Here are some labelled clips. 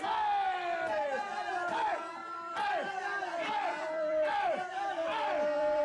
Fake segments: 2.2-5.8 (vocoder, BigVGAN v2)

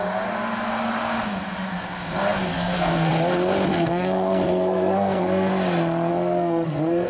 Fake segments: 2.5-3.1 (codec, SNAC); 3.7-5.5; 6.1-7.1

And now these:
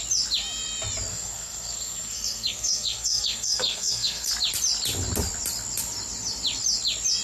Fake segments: 1.1-4.3 (codec, SNAC)

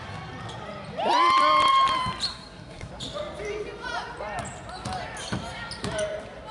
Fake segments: 2.3-2.9 (codec, SNAC)

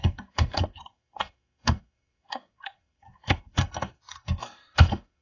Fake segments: 0.0-5.2 (codec, SNAC)

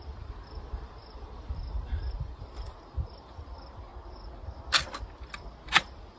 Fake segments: 0.0-3.9 (vocoder, BigVGAN v2); 5.6-6.2